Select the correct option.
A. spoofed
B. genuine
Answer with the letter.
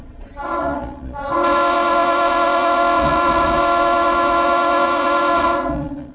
A